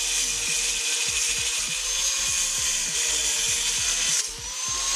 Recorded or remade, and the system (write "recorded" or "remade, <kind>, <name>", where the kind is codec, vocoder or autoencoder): recorded